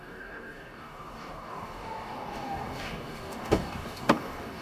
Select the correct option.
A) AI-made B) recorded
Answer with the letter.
A